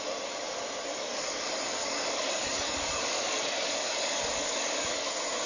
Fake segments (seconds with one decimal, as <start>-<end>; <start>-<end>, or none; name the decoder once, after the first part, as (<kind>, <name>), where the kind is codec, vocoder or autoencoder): 0.9-1.4 (codec, DAC); 1.8-5.1